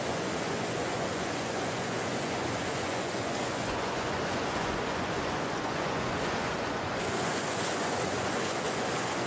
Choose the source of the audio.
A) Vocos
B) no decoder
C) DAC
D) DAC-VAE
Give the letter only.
A